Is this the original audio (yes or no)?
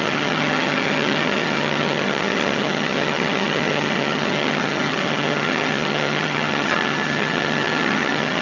no